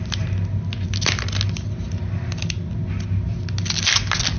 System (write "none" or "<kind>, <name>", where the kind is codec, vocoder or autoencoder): none